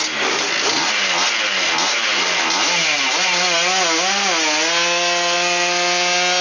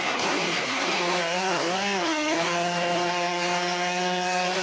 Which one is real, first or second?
first